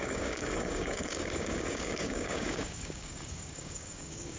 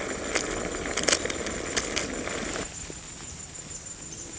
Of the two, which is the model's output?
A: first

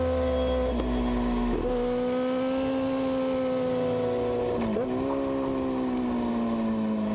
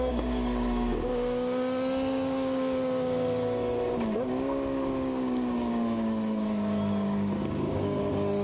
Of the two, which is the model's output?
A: second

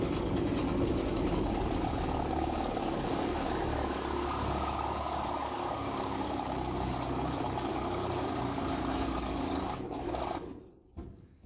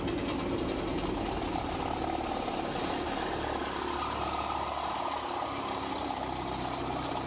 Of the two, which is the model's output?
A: first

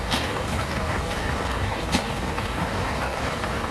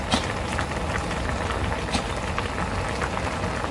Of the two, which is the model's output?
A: first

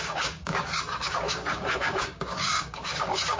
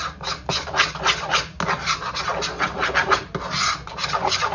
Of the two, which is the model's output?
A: first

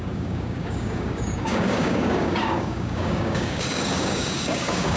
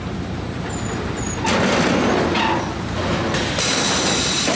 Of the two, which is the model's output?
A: first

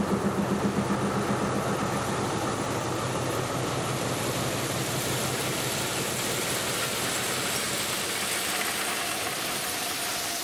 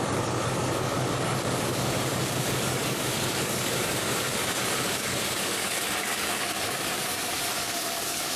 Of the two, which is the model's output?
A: second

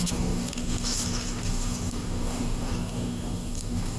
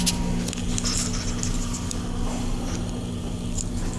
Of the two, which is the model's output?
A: first